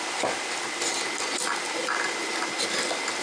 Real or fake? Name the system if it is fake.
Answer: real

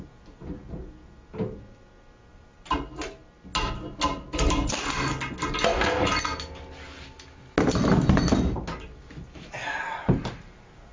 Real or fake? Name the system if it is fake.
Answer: real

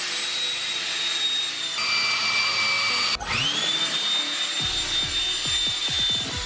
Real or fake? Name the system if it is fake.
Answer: real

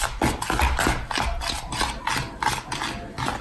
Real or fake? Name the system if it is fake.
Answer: real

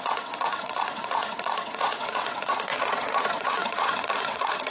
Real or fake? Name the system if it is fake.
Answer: fake, vocoder, WaveNeXt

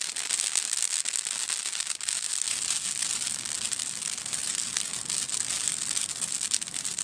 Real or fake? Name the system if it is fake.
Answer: real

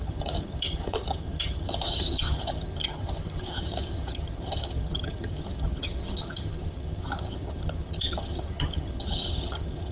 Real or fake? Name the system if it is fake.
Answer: fake, vocoder, HiFi-GAN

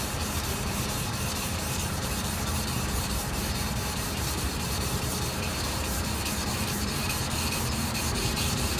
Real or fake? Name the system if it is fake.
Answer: fake, vocoder, BigVGAN v2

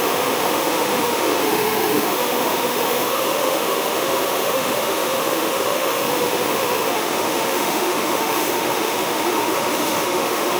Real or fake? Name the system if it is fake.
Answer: fake, autoencoder, DAC-VAE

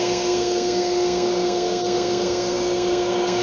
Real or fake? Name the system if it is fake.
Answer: fake, codec, SNAC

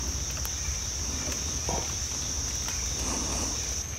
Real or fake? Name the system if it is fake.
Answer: real